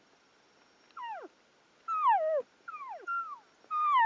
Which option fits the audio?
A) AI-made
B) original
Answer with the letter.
B